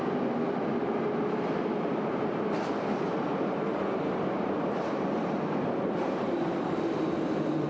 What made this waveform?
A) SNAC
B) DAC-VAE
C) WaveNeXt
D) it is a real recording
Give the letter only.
D